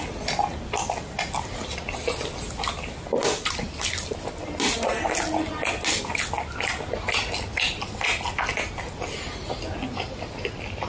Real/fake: real